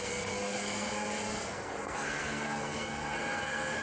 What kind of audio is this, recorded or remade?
remade